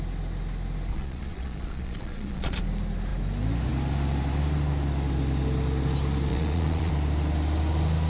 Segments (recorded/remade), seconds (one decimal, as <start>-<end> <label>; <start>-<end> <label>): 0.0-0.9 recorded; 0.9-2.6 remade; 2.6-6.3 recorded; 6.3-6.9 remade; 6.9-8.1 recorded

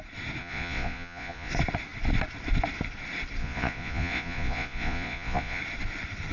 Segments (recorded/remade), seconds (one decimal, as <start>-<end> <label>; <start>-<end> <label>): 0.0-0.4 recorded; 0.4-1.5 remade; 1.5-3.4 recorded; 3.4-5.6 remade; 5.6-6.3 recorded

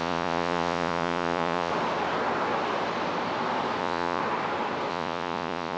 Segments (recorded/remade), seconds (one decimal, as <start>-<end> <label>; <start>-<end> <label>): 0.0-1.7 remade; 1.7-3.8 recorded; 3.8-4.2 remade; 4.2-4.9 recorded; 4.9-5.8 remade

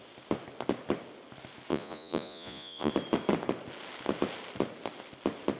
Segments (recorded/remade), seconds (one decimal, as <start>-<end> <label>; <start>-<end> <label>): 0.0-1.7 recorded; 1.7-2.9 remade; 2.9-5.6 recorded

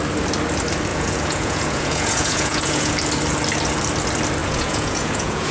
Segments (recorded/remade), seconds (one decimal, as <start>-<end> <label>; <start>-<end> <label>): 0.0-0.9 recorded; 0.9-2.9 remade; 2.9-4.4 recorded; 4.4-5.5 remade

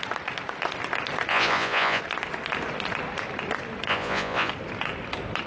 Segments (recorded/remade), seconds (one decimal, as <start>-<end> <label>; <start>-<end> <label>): 0.0-1.3 recorded; 1.3-2.0 remade; 2.0-3.9 recorded; 3.9-4.5 remade; 4.5-5.5 recorded

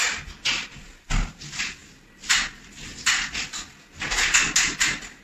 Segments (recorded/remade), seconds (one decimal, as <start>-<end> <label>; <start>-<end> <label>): 0.0-5.2 recorded